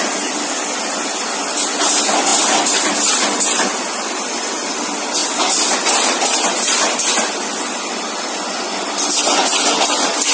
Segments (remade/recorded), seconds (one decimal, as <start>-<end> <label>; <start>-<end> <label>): 0.0-10.3 recorded